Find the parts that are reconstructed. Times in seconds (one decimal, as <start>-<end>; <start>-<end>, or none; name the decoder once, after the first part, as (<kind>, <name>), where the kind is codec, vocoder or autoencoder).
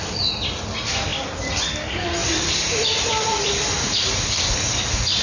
2.2-3.5 (vocoder, BigVGAN v2)